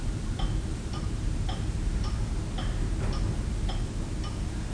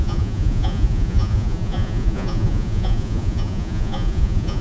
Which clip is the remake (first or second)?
second